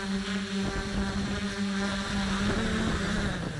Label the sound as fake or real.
real